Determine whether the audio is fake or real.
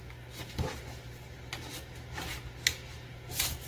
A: real